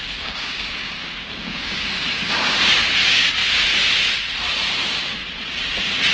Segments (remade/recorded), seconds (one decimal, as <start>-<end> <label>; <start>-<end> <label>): 0.0-3.4 remade; 3.4-4.8 recorded; 4.8-5.2 remade; 5.2-6.1 recorded